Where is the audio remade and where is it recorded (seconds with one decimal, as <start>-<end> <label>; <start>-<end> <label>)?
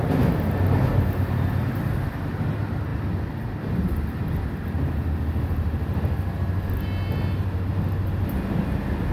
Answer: 0.0-2.9 recorded; 2.9-3.7 remade; 3.7-9.1 recorded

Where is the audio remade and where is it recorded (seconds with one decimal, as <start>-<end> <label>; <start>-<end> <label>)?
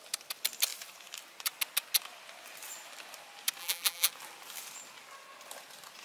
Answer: 0.0-3.6 recorded; 3.6-4.1 remade; 4.1-6.0 recorded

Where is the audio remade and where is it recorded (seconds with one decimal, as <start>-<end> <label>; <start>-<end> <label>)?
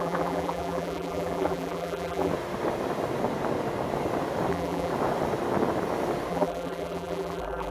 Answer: 0.0-2.3 remade; 2.3-4.5 recorded; 4.5-4.9 remade; 4.9-6.3 recorded; 6.3-7.7 remade